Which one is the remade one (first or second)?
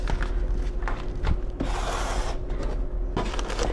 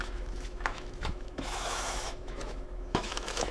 second